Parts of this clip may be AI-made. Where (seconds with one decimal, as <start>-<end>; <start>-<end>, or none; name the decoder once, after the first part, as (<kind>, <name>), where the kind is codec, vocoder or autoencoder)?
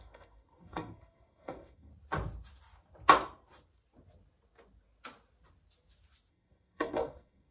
0.0-1.9 (codec, SNAC); 6.3-7.5